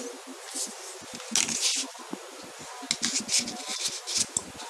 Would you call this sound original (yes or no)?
yes